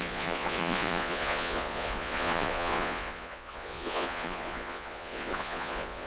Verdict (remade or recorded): remade